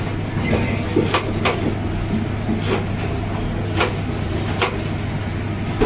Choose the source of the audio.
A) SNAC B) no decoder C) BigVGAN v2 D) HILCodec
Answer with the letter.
B